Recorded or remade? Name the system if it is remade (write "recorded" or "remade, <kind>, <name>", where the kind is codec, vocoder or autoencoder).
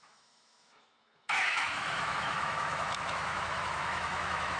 remade, autoencoder, DAC-VAE